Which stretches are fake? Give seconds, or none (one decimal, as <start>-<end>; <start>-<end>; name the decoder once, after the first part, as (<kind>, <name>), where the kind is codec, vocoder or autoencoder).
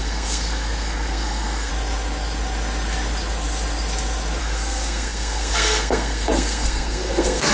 0.0-1.7 (codec, SNAC); 4.4-7.5